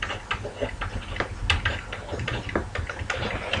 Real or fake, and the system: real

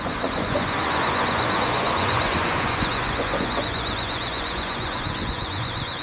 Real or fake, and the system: fake, vocoder, Vocos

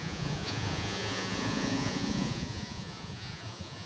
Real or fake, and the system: fake, vocoder, Vocos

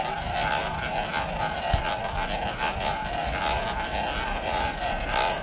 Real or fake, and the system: real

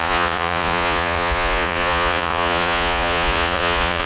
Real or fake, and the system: fake, vocoder, Vocos